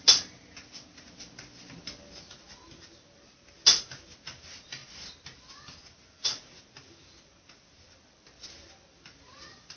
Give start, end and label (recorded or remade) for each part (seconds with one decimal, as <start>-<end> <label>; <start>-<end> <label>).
0.0-9.8 recorded